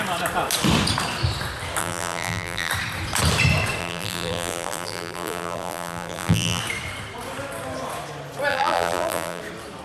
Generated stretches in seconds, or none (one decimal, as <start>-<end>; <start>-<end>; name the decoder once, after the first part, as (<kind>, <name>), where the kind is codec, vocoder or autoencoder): 1.8-2.7 (vocoder, BigVGAN v2); 3.8-6.6; 8.5-9.4